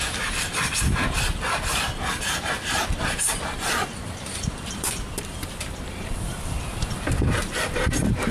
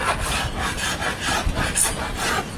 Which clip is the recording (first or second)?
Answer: second